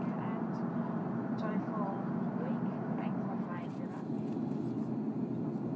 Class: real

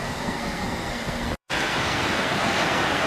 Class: fake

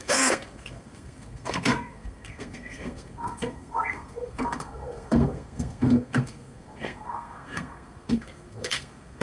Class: fake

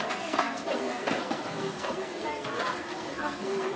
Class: fake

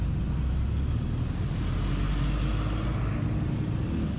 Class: real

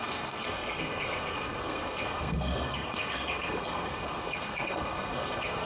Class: fake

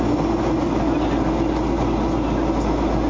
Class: real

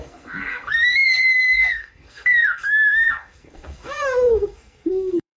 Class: fake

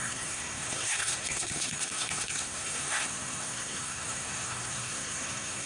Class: fake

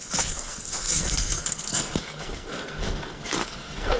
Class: fake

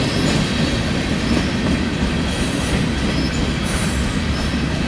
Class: real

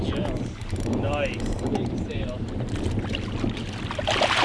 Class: real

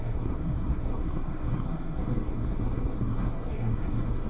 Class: fake